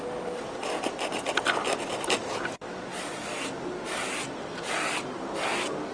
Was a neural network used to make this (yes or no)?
no